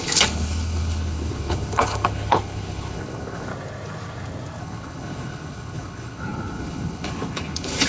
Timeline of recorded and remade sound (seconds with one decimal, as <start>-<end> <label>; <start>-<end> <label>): 0.0-3.5 remade; 3.5-4.6 recorded; 4.6-7.9 remade